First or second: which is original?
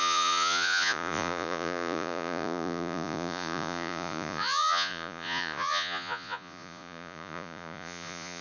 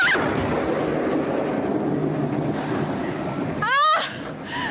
second